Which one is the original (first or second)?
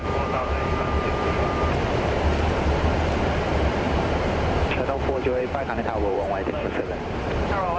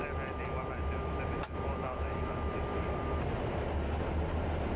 second